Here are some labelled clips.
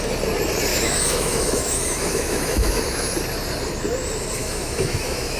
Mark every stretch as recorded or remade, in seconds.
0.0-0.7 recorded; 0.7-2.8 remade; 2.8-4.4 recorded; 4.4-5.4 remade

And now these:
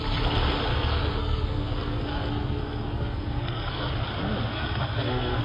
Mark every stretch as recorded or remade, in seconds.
0.0-0.7 recorded; 0.7-3.9 remade; 3.9-4.5 recorded; 4.5-5.4 remade

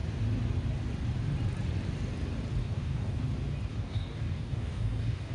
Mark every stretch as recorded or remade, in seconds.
0.0-2.6 recorded; 2.6-3.2 remade; 3.2-3.7 recorded; 3.7-5.3 remade

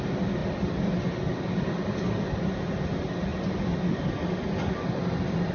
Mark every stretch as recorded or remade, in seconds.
0.0-5.5 recorded

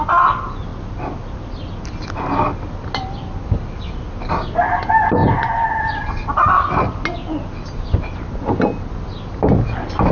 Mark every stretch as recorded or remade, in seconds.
0.0-10.1 recorded

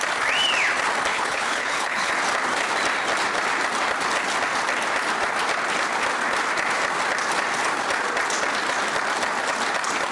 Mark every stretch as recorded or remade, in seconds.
0.0-1.1 recorded; 1.1-2.1 remade; 2.1-10.1 recorded

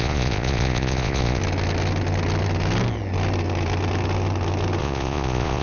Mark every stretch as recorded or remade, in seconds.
0.0-1.4 remade; 1.4-4.8 recorded; 4.8-5.6 remade